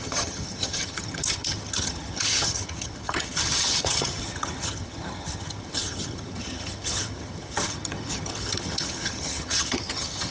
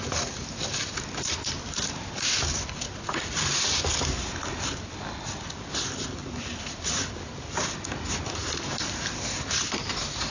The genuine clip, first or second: second